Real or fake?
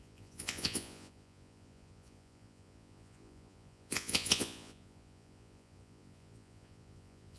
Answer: fake